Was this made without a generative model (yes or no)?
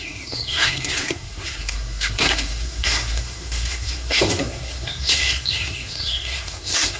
no